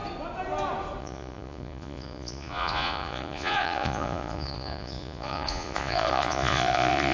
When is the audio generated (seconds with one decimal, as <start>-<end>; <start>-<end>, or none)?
1.0-7.1